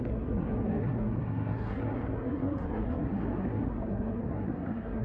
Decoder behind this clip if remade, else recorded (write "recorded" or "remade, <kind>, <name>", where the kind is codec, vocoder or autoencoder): remade, codec, SNAC